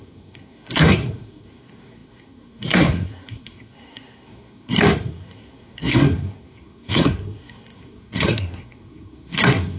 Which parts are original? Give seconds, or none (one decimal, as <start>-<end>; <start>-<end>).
none